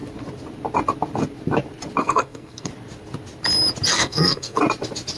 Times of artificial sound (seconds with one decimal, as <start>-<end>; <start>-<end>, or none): 2.0-2.7; 3.9-4.6